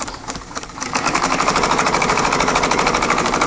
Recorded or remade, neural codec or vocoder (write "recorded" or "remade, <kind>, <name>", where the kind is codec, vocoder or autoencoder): remade, codec, DAC